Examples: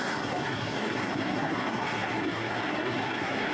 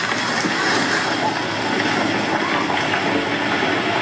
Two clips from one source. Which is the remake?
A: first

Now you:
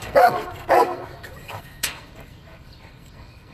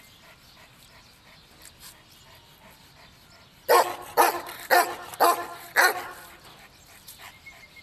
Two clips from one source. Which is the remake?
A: first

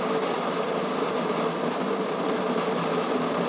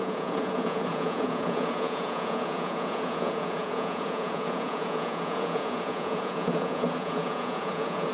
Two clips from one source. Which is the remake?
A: second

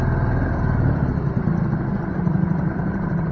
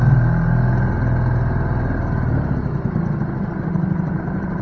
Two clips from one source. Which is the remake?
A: first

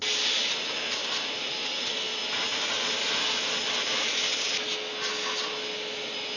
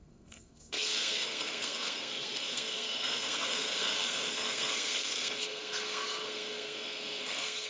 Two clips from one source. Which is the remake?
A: second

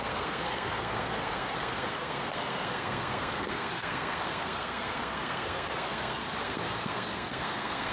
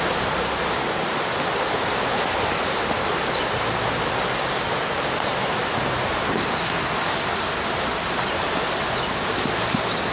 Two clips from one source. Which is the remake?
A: first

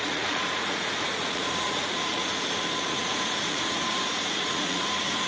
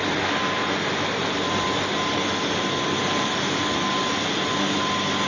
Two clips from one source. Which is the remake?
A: first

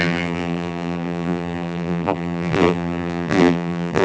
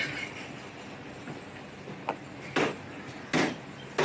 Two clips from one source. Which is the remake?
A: first